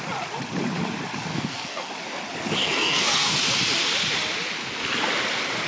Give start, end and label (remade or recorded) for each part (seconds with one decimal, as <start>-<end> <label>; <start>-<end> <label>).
0.0-1.3 recorded; 1.3-1.9 remade; 1.9-2.6 recorded; 2.6-3.3 remade; 3.3-5.7 recorded